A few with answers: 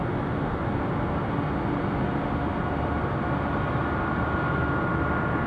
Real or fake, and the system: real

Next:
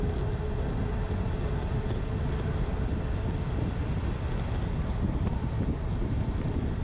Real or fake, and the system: real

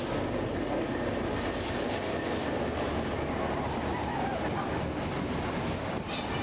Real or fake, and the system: real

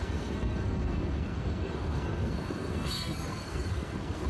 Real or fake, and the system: fake, codec, SNAC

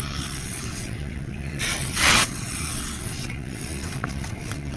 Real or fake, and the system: fake, vocoder, WaveNeXt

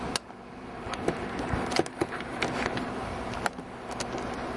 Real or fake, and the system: real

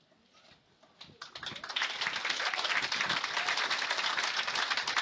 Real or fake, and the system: real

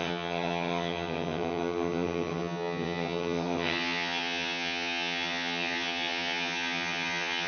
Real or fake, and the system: fake, vocoder, HiFi-GAN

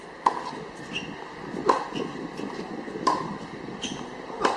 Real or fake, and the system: real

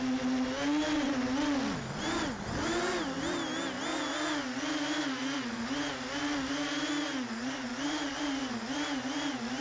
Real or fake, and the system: real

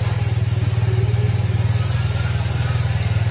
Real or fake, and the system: real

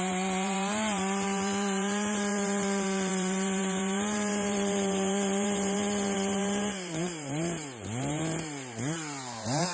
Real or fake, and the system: fake, vocoder, BigVGAN v2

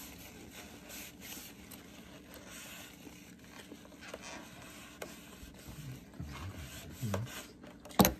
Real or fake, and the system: real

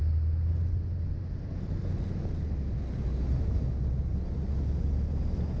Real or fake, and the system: real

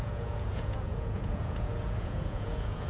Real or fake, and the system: fake, vocoder, Vocos